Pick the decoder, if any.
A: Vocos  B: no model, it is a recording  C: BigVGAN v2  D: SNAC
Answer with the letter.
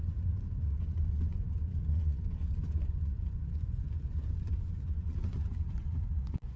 A